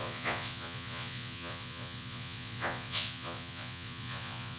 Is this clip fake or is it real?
fake